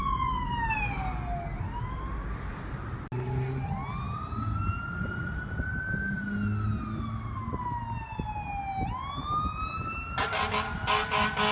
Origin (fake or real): real